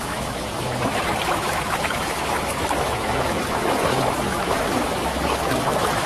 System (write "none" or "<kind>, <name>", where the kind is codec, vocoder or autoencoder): autoencoder, DAC-VAE